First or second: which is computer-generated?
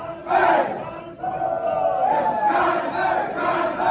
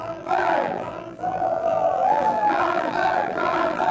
second